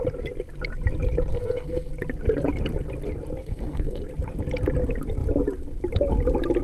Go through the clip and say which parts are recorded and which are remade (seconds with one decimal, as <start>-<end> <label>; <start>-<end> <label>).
0.0-1.3 recorded; 1.3-1.9 remade; 1.9-3.4 recorded; 3.4-4.0 remade; 4.0-6.6 recorded